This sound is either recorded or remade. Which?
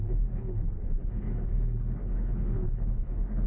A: remade